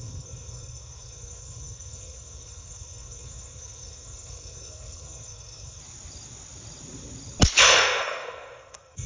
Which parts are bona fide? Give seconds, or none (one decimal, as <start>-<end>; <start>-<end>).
5.8-7.6